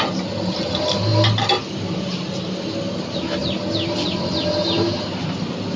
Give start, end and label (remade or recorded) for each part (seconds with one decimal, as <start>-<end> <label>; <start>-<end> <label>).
0.0-5.8 recorded